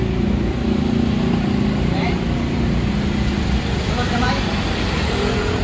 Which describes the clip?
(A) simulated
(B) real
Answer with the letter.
B